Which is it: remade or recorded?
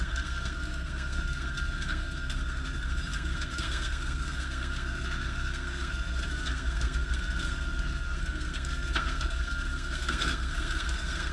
remade